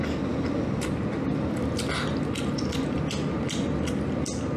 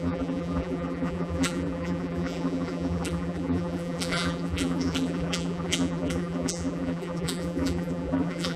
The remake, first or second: second